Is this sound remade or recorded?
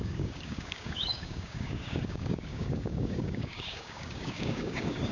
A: remade